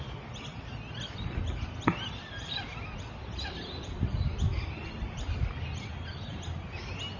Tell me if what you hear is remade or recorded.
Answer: recorded